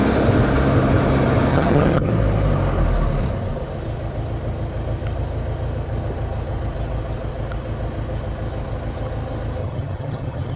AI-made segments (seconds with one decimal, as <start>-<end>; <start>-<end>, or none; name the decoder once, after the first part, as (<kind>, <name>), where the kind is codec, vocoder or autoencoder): 1.5-2.1 (vocoder, HiFi-GAN); 9.6-10.6